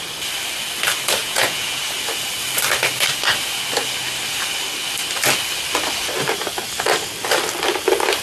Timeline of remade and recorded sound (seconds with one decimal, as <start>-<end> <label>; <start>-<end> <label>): 0.0-1.2 recorded; 1.2-1.8 remade; 1.8-8.2 recorded